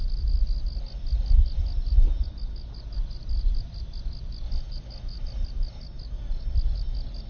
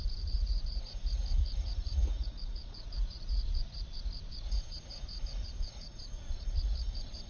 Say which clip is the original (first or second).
first